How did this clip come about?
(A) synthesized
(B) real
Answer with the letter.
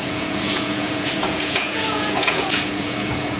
A